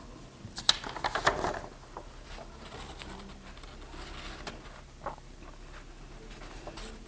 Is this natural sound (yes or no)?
yes